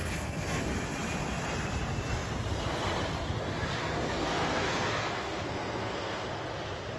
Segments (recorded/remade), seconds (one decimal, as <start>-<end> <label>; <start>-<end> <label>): 0.0-0.6 remade; 0.6-3.8 recorded; 3.8-6.3 remade; 6.3-7.0 recorded